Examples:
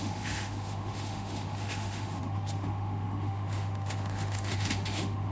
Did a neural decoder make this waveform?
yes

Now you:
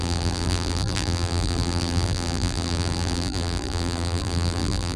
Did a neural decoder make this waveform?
yes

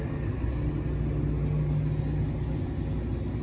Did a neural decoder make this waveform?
no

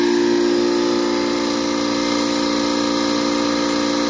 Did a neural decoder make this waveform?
no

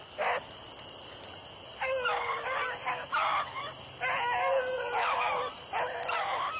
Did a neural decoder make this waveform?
no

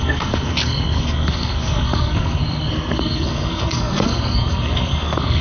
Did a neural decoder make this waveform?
yes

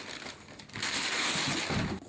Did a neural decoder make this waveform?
no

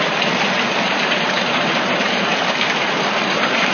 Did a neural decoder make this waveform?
yes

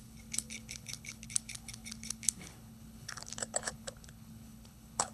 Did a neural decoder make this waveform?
yes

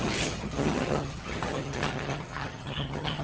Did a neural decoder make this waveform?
yes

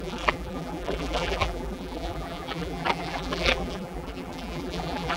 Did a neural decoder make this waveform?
yes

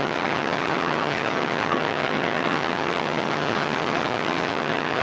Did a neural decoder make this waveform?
yes